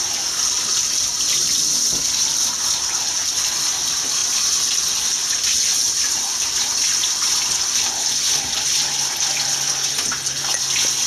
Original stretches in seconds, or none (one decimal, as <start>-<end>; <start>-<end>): 0.0-11.1